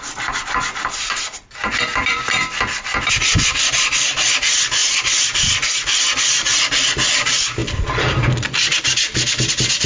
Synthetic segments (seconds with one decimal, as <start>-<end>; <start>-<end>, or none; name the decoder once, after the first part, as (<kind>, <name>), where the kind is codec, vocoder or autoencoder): 0.0-9.9 (vocoder, BigVGAN v2)